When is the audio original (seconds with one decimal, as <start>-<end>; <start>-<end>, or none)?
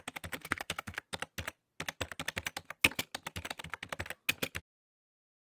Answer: 0.0-0.4; 1.0-5.6